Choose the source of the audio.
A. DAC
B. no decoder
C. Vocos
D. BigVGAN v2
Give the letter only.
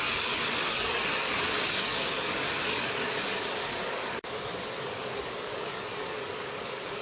A